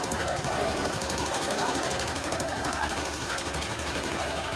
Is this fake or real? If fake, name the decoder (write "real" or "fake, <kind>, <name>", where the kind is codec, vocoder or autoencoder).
fake, codec, SNAC